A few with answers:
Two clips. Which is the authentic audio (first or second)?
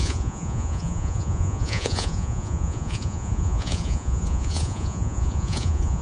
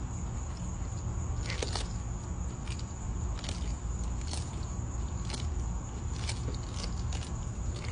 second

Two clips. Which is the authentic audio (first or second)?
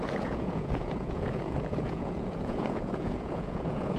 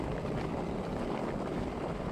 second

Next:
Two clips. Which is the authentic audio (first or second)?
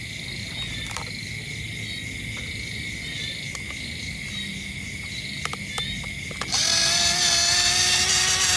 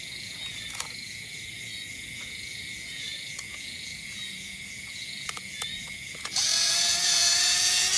first